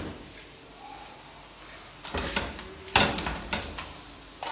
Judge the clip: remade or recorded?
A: recorded